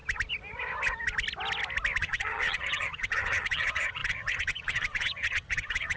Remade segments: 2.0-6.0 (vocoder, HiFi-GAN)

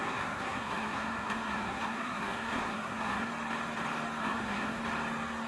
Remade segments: 0.0-3.3 (codec, SNAC); 4.2-4.8